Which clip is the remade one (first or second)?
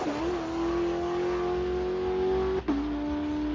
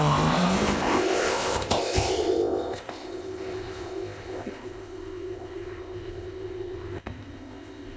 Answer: second